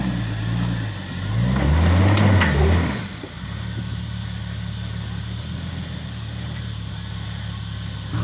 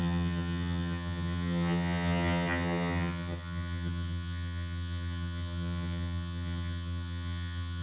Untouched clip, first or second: first